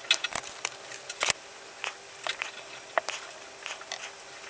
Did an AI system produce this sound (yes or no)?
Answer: no